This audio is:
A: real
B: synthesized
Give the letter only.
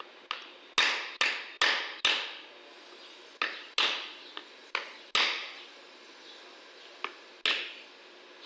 A